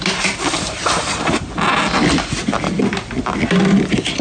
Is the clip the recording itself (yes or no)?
yes